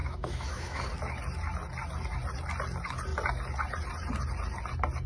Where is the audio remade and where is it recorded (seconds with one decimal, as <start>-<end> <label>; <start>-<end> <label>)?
0.0-0.8 remade; 0.8-5.1 recorded